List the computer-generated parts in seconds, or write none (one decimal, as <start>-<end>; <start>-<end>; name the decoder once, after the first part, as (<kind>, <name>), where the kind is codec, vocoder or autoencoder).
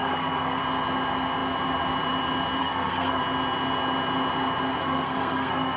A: 0.0-0.6 (codec, SNAC); 2.6-3.2; 4.8-5.8